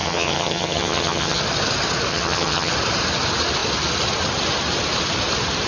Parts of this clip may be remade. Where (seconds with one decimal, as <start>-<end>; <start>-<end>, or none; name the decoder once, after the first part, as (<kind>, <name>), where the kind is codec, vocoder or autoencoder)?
0.0-1.4 (vocoder, HiFi-GAN); 2.1-2.7